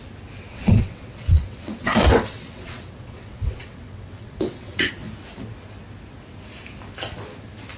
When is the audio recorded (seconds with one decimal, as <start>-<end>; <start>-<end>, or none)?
0.0-0.5; 4.9-7.8